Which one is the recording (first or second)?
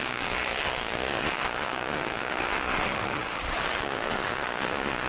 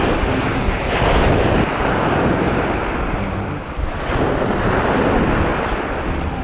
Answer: second